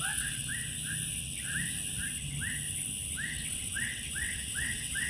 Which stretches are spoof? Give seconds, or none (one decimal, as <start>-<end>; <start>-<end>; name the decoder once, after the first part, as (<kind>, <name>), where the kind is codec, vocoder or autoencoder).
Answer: 0.0-0.5 (vocoder, WaveNeXt); 3.3-5.1